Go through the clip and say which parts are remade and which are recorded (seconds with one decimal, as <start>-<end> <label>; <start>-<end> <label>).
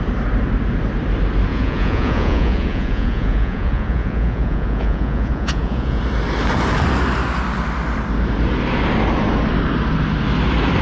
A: 0.0-1.5 recorded; 1.5-6.0 remade; 6.0-10.8 recorded